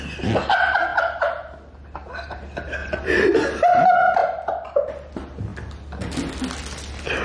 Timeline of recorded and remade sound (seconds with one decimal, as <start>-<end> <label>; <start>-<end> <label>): 0.0-2.8 recorded; 2.8-3.3 remade; 3.3-7.2 recorded